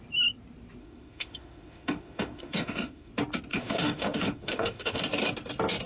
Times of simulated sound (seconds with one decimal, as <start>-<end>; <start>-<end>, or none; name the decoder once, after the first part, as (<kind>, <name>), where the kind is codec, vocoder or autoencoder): 0.8-3.1 (autoencoder, DAC-VAE); 3.5-5.0